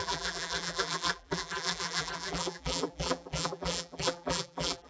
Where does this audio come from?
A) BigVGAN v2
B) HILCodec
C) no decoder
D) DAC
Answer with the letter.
A